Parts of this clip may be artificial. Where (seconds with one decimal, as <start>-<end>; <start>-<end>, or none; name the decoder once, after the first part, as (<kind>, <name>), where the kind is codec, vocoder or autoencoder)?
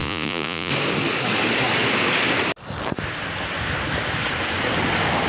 0.0-0.7 (vocoder, Vocos)